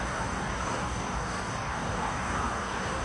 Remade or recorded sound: remade